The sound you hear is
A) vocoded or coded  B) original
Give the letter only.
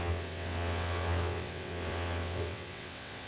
A